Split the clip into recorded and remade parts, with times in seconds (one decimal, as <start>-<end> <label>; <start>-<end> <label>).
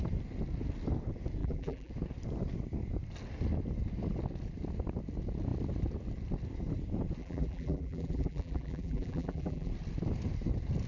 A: 0.0-1.4 recorded; 1.4-1.9 remade; 1.9-7.2 recorded; 7.2-9.7 remade; 9.7-10.9 recorded